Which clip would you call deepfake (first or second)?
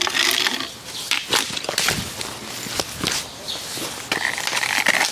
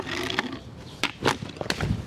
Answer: second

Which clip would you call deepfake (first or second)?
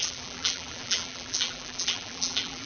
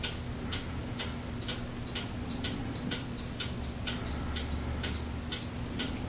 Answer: first